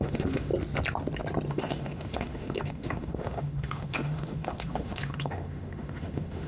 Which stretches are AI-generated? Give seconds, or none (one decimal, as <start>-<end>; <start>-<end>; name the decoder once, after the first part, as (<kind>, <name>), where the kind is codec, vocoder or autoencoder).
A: 0.0-0.5 (autoencoder, DAC-VAE); 1.5-6.5